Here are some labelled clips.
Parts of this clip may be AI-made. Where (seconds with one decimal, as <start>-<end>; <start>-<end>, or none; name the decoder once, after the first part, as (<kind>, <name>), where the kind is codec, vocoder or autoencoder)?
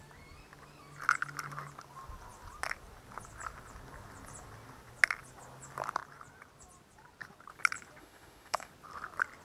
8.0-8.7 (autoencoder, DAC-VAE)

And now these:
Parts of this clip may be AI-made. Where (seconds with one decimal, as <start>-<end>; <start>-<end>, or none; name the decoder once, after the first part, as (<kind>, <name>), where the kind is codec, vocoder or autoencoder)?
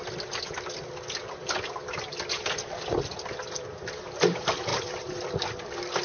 4.7-5.3 (vocoder, BigVGAN v2)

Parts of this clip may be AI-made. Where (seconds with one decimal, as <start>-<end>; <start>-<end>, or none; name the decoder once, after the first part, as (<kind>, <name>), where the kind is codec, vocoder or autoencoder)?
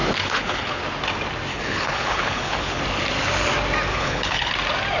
0.0-0.8 (codec, HILCodec); 1.5-2.8; 3.9-4.5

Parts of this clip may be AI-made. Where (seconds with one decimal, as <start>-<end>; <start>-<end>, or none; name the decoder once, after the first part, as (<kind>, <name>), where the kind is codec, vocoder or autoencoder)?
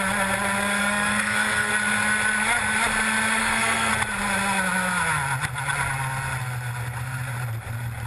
0.8-1.7 (codec, SNAC); 3.4-3.9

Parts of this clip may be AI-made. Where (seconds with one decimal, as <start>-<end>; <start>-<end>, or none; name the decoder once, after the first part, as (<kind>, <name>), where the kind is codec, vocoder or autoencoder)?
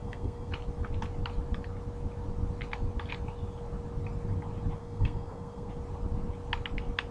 0.0-0.5 (codec, SNAC); 4.8-5.7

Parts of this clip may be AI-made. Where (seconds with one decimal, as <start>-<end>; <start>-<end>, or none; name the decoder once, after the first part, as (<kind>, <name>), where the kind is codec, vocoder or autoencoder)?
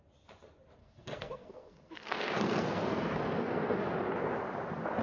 0.8-3.8 (codec, SNAC)